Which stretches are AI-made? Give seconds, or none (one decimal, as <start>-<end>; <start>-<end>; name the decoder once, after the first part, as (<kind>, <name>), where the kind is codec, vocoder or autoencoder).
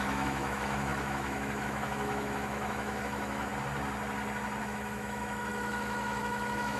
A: 0.0-3.5 (autoencoder, DAC-VAE); 4.6-6.8